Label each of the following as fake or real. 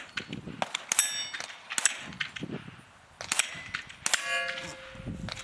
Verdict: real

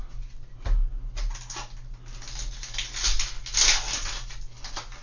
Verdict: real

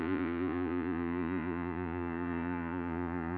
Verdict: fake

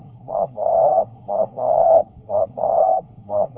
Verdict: fake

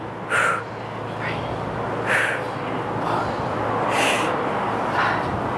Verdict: real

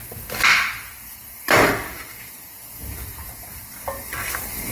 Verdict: real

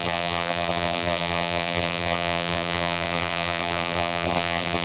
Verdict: fake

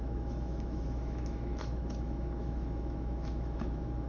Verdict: fake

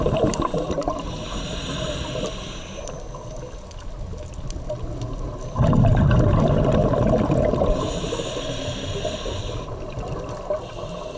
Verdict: real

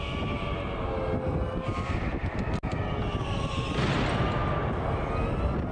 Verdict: real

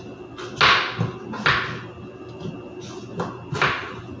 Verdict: real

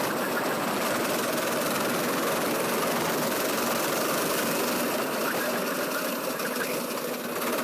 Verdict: real